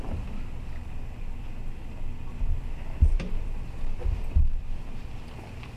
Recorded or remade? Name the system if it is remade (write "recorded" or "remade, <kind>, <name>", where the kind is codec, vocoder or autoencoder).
recorded